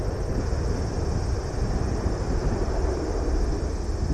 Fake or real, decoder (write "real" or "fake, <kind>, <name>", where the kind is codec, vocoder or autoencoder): real